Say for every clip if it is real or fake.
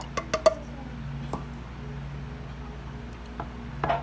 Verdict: real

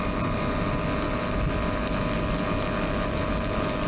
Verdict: real